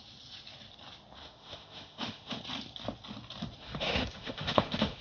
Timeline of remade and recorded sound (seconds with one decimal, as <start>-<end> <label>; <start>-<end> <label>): 0.0-1.2 recorded; 1.2-2.4 remade; 2.4-3.6 recorded; 3.6-5.0 remade